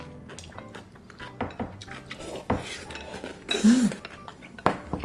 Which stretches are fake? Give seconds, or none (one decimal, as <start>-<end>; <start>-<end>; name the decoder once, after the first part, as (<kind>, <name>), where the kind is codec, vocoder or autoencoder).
3.3-3.8 (codec, DAC); 4.3-5.0